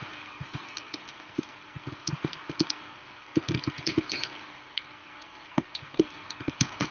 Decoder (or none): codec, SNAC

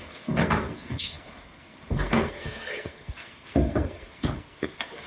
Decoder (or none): codec, SNAC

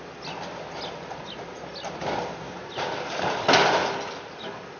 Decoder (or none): none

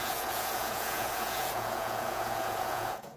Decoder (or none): vocoder, Vocos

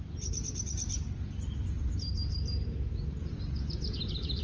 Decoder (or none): none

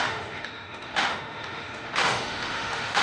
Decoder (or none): autoencoder, DAC-VAE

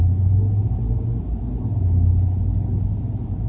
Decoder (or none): none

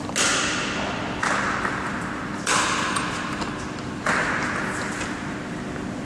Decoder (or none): none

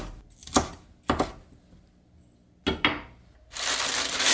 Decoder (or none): none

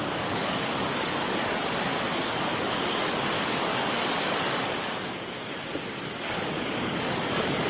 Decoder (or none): codec, DAC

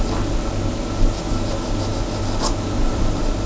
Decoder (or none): none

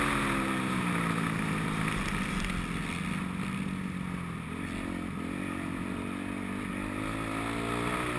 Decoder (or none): none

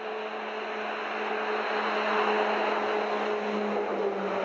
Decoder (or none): none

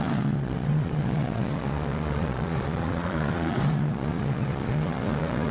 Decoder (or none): vocoder, Vocos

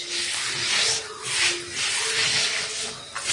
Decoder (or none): none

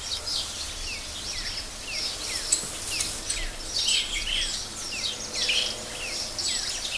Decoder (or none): none